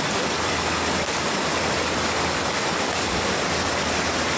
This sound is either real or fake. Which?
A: real